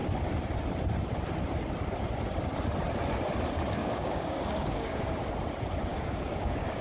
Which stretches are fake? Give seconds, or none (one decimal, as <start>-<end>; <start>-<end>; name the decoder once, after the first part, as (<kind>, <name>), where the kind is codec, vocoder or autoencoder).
3.8-5.0 (codec, DAC); 5.9-6.8

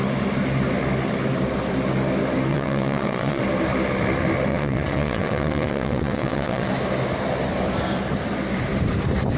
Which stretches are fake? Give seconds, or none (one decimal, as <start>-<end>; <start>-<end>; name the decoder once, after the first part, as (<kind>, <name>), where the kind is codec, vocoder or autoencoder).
2.5-3.4 (vocoder, WaveNeXt); 4.5-6.7